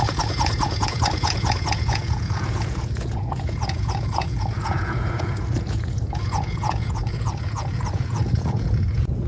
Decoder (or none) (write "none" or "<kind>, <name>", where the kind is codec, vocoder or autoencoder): vocoder, Vocos